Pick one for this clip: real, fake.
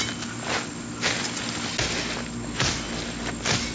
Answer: real